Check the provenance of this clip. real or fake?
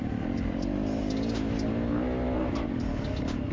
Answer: real